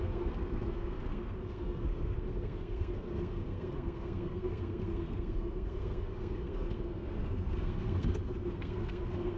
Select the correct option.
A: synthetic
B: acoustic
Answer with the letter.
A